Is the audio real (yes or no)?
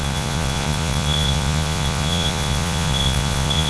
no